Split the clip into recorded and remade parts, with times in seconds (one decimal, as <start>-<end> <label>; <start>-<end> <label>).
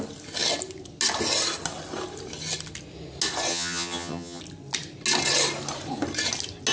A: 0.0-3.5 recorded; 3.5-4.4 remade; 4.4-6.7 recorded